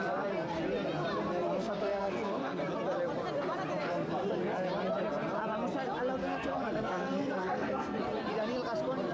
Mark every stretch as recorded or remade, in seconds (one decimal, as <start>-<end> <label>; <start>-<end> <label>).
0.0-1.6 recorded; 1.6-2.6 remade; 2.6-6.2 recorded; 6.2-8.0 remade; 8.0-9.1 recorded